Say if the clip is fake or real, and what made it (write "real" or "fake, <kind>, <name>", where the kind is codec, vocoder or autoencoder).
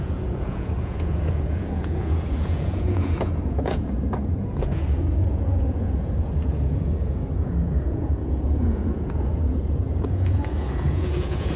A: fake, vocoder, Vocos